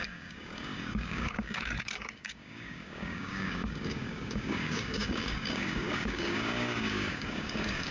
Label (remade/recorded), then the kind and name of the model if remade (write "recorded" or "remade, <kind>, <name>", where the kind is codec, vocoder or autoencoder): remade, codec, DAC